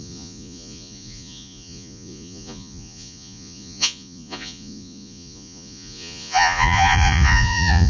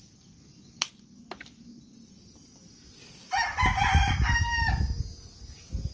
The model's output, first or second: first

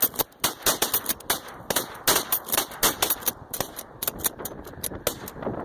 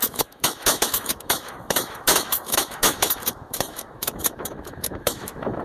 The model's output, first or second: second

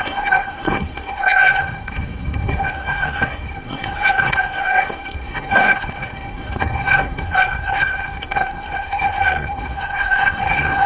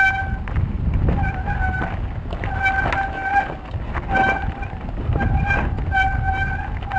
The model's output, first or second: first